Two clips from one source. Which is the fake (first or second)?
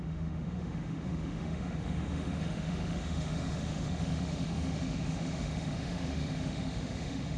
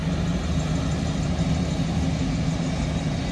first